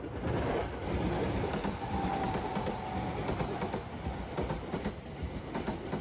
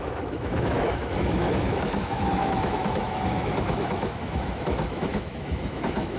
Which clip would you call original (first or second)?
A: first